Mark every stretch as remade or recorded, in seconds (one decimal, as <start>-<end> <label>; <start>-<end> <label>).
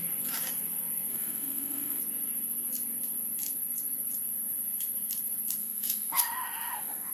0.0-1.1 recorded; 1.1-2.0 remade; 2.0-5.6 recorded; 5.6-7.1 remade